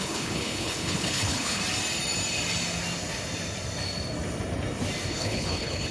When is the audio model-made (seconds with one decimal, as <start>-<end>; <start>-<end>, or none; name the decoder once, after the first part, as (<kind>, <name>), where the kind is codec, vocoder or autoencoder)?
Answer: 0.0-1.6 (codec, HILCodec); 5.1-5.9